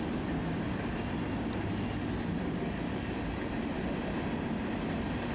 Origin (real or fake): real